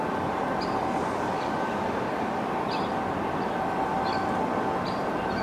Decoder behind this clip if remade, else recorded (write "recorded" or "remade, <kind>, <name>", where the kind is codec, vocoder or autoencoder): recorded